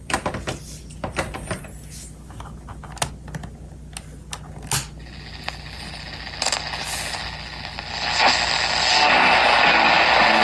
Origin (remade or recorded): recorded